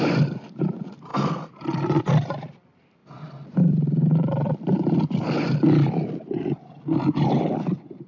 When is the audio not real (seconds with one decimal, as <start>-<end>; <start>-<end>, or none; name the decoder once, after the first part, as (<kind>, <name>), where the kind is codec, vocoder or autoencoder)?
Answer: 0.0-3.0 (vocoder, BigVGAN v2); 6.4-8.1